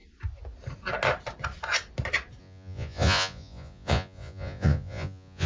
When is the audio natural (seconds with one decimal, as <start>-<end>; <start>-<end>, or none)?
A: 0.0-2.4